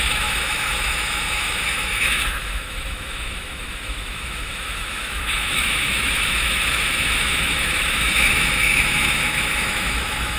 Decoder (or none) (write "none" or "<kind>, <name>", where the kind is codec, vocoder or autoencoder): autoencoder, DAC-VAE